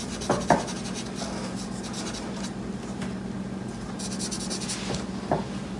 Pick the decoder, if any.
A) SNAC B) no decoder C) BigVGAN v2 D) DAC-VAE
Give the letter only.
B